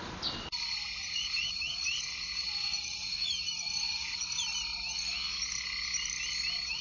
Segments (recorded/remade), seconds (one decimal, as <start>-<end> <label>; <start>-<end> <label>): 0.0-1.0 recorded; 1.0-4.4 remade; 4.4-6.8 recorded